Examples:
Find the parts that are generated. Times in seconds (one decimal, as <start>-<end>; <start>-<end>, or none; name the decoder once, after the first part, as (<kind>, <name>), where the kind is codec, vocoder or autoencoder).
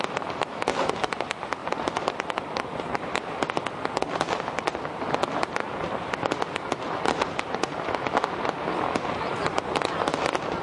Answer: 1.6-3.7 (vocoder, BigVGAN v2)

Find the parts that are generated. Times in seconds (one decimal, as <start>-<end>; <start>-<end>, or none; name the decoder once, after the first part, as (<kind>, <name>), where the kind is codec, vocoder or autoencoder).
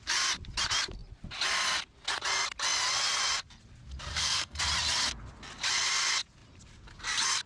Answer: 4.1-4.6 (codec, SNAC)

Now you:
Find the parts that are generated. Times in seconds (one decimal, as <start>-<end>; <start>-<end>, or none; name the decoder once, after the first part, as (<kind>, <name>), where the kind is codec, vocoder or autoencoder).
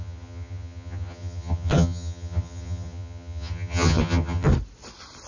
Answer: 0.0-4.5 (vocoder, HiFi-GAN)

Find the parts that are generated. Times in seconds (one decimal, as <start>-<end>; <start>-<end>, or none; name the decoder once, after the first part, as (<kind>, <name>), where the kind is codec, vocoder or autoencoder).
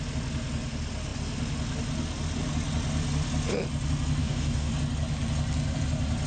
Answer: 4.2-4.7 (codec, DAC)